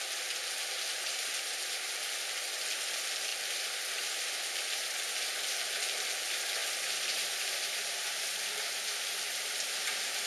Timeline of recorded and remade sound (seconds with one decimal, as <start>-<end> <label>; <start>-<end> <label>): 0.0-0.9 recorded; 0.9-1.9 remade; 1.9-3.3 recorded; 3.3-5.1 remade; 5.1-6.6 recorded; 6.6-8.6 remade; 8.6-10.3 recorded